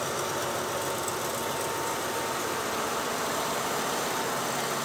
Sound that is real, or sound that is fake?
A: real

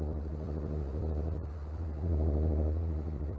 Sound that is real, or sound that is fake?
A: fake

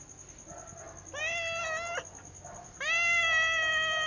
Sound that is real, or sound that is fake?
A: real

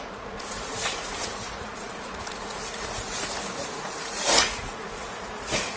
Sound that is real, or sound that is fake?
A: fake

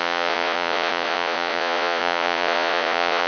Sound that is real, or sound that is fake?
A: fake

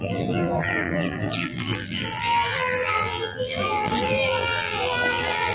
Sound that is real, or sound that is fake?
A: fake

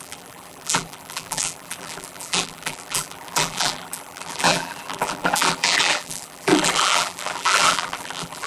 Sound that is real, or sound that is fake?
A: fake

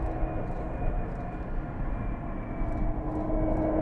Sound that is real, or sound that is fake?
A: real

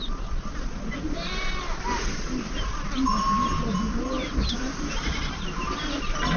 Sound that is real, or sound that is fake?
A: real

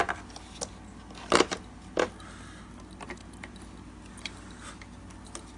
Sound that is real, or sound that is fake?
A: real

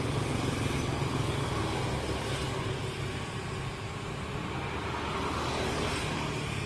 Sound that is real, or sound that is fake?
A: real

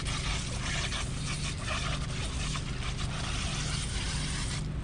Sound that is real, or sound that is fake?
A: real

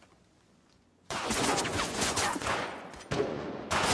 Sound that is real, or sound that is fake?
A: fake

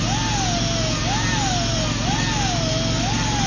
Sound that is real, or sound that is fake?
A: real